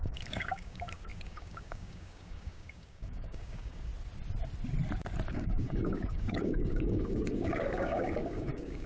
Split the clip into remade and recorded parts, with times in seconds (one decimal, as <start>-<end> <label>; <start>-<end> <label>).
0.0-3.9 remade; 3.9-5.3 recorded; 5.3-8.9 remade